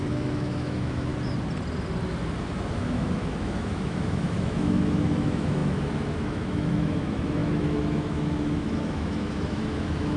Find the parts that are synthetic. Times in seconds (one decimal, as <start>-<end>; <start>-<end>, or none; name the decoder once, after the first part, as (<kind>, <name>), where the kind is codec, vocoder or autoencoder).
0.0-1.1 (autoencoder, DAC-VAE); 2.7-10.2